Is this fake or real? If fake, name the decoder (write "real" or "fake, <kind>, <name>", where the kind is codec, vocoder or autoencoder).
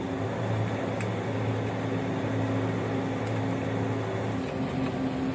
real